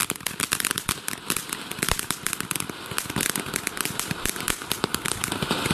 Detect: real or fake real